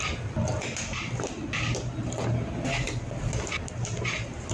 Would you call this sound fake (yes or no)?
no